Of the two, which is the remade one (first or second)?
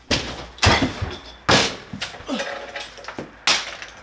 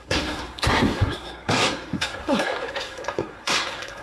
second